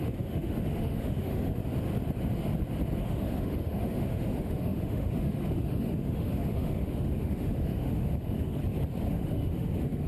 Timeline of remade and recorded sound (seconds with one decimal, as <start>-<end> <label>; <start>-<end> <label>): 0.0-1.6 remade; 1.6-3.0 recorded; 3.0-8.6 remade; 8.6-9.1 recorded; 9.1-10.1 remade